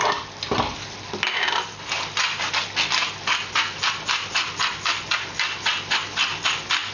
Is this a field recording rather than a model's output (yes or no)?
yes